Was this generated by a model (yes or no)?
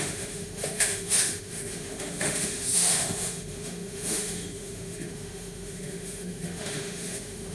yes